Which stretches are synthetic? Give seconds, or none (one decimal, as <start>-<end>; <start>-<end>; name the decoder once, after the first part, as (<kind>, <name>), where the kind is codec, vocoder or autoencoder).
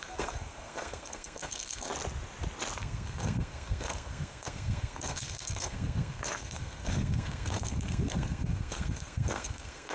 0.0-1.9 (codec, SNAC); 2.8-9.9